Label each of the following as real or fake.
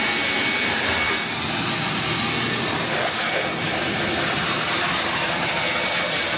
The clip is real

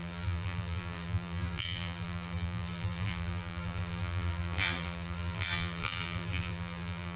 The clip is fake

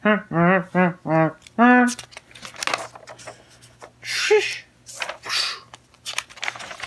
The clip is real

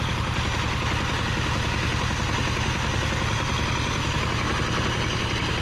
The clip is real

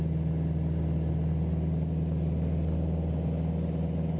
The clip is real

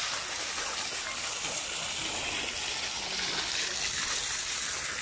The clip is real